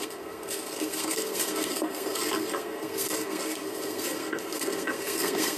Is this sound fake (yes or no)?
yes